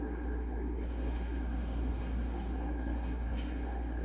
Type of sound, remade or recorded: remade